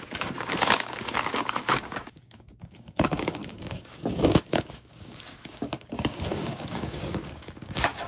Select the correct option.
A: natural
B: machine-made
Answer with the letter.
B